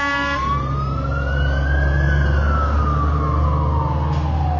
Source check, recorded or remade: recorded